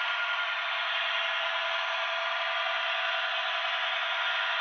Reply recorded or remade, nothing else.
recorded